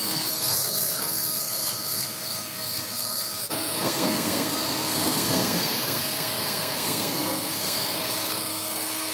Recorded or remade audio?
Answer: remade